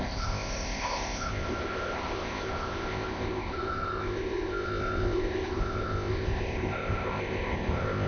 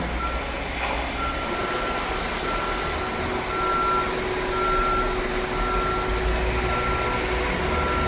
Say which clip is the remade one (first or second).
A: first